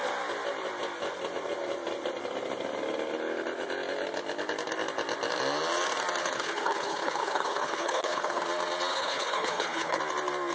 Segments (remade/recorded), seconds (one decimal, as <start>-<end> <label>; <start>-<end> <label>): 0.0-6.2 recorded; 6.2-8.4 remade; 8.4-8.9 recorded; 8.9-10.0 remade; 10.0-10.5 recorded